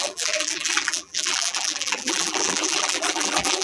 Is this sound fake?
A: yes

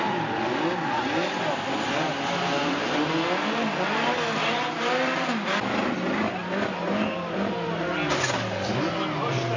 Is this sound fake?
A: no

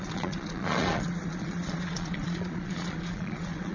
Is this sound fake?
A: yes